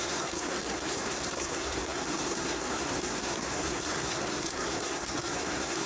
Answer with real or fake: fake